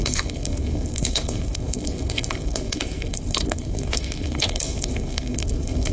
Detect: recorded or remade remade